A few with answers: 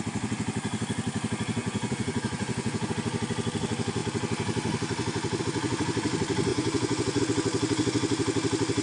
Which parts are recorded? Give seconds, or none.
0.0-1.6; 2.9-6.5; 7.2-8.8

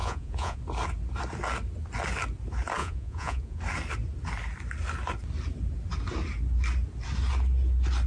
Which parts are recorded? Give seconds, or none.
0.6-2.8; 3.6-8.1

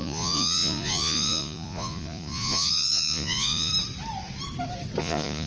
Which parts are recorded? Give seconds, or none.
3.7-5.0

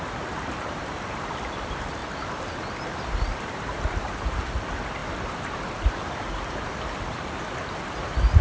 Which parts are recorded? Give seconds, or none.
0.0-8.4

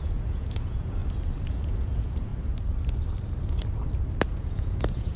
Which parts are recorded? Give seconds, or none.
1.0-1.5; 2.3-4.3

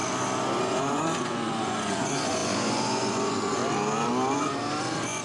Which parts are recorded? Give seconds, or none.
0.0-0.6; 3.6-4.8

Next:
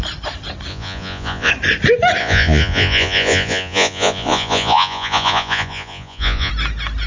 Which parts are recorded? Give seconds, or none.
0.0-0.7; 1.5-2.2; 6.5-7.1